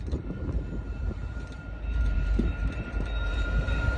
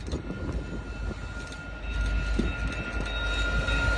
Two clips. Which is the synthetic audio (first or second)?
first